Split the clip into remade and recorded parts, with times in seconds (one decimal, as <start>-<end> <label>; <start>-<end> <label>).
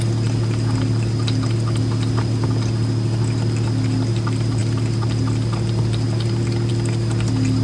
0.0-7.6 recorded